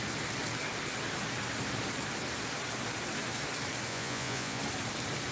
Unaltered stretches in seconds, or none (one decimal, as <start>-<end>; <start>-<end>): 0.0-3.9; 4.6-5.3